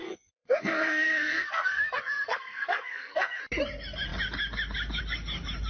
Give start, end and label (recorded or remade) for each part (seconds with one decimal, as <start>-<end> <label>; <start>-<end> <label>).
0.0-3.4 remade; 3.4-5.7 recorded